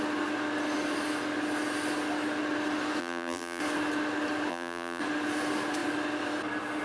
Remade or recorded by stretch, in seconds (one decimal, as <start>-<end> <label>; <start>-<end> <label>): 0.0-3.0 recorded; 3.0-3.6 remade; 3.6-4.5 recorded; 4.5-5.0 remade; 5.0-6.8 recorded